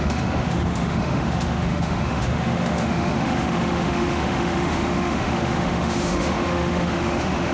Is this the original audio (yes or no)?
no